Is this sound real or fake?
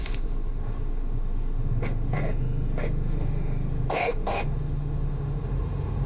fake